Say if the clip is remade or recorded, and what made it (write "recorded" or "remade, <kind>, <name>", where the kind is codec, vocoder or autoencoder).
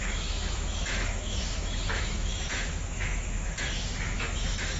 remade, autoencoder, DAC-VAE